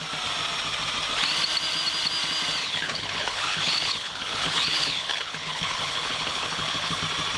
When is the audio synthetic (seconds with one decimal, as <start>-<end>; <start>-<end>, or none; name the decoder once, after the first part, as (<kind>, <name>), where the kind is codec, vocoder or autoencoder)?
2.6-7.0 (codec, HILCodec)